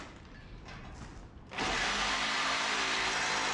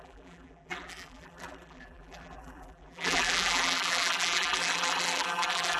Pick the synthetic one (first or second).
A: second